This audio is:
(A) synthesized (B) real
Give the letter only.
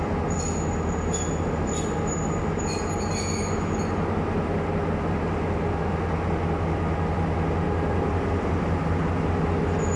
B